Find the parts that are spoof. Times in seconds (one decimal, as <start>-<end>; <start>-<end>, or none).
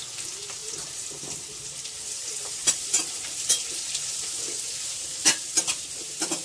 0.6-4.4